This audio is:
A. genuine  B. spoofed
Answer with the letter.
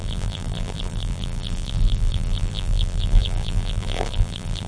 B